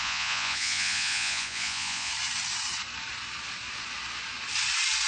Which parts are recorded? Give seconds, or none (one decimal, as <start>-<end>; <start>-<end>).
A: 2.1-5.1